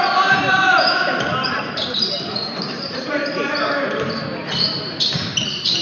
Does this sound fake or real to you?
fake